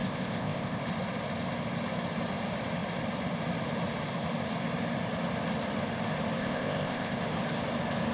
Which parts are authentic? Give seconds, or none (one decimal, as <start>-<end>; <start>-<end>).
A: 0.8-6.4; 7.2-8.1